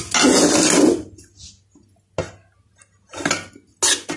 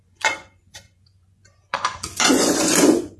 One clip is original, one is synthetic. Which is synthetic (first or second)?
second